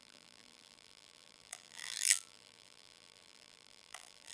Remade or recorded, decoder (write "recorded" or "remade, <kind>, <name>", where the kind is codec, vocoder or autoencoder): remade, vocoder, BigVGAN v2